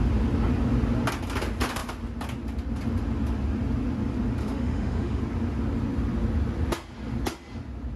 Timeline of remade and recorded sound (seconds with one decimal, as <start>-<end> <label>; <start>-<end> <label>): 0.0-4.4 recorded; 4.4-5.2 remade; 5.2-8.0 recorded